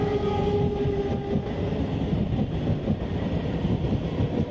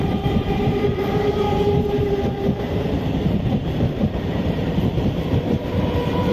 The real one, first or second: first